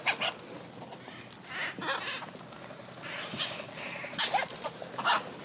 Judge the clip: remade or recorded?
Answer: recorded